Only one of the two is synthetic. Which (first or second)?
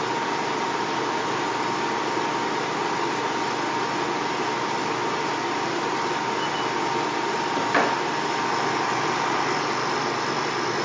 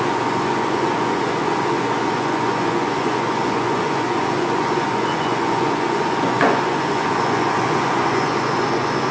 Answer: second